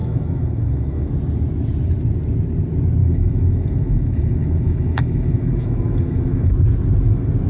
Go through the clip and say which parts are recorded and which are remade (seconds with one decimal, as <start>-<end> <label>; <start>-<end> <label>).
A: 0.0-1.1 remade; 1.1-3.0 recorded; 3.0-6.5 remade; 6.5-7.5 recorded